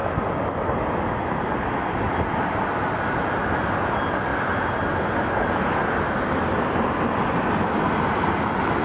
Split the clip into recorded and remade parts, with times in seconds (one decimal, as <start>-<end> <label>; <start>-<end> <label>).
0.0-8.8 recorded